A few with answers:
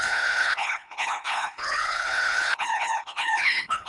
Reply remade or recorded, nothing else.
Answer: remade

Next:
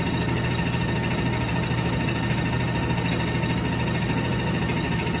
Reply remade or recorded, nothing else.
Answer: recorded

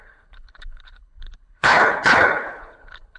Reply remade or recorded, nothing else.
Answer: remade